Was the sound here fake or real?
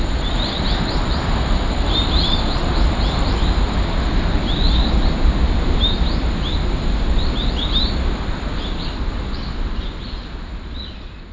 real